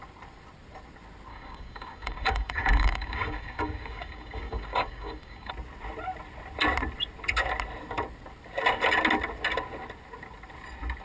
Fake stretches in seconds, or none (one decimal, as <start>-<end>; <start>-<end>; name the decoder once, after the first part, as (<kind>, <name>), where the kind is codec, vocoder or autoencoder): 1.3-5.5 (codec, DAC)